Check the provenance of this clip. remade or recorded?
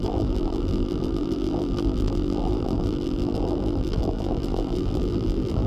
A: remade